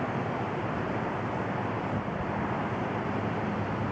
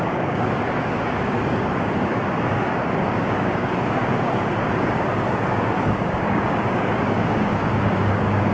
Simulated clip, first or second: second